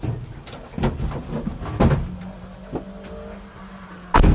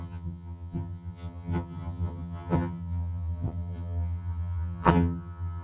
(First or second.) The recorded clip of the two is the first